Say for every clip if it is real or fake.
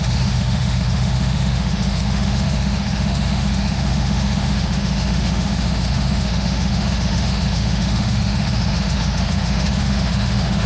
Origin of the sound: fake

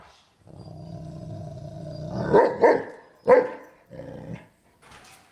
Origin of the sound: real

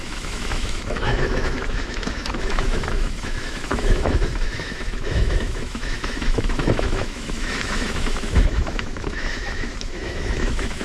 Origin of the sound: fake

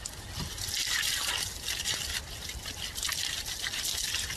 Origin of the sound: real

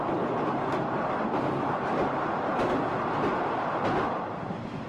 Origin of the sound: real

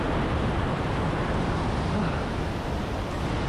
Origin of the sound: real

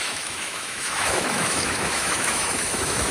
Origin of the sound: fake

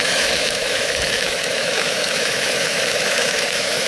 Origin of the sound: fake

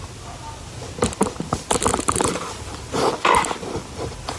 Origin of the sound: real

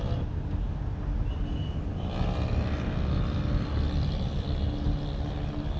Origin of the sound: real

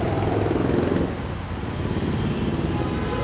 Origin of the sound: real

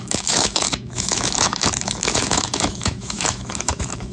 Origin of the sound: fake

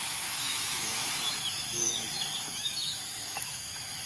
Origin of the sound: fake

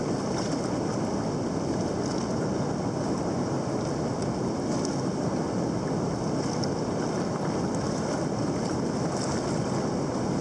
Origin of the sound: real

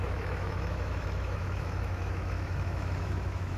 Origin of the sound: fake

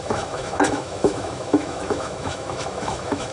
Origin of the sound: fake